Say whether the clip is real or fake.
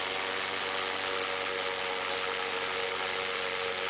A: real